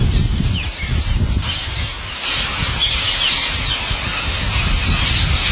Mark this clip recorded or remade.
recorded